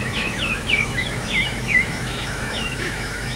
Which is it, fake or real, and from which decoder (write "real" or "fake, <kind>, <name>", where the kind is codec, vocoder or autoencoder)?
fake, autoencoder, DAC-VAE